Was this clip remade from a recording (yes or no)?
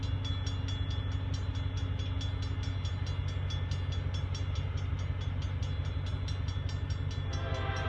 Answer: no